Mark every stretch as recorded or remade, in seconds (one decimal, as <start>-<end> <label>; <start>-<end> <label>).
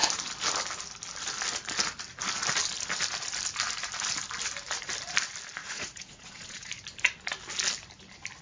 0.0-5.6 recorded; 5.6-6.7 remade; 6.7-8.4 recorded